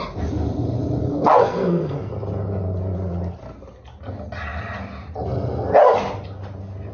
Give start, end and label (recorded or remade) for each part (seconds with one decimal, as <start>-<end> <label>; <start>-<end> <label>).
0.0-1.0 recorded; 1.0-2.1 remade; 2.1-6.9 recorded